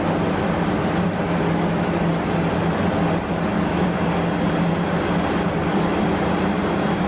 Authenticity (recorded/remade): remade